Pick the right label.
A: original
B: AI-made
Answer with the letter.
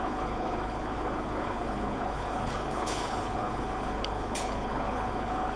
B